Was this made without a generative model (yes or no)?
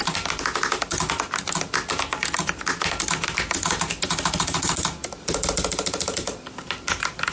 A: yes